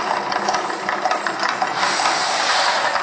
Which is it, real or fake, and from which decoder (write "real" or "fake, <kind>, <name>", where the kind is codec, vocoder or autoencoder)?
real